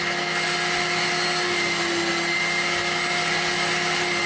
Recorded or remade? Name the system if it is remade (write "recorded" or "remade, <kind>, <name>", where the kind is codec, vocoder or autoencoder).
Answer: recorded